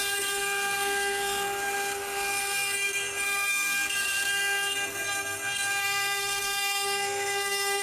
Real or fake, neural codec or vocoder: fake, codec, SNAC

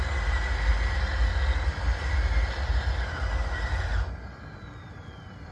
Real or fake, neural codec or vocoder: real